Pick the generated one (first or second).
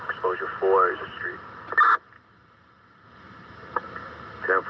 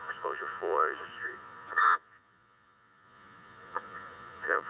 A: second